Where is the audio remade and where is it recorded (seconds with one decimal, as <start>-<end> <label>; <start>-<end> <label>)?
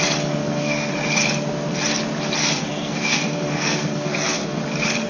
0.0-0.4 recorded; 0.4-0.9 remade; 0.9-2.4 recorded; 2.4-4.6 remade; 4.6-5.1 recorded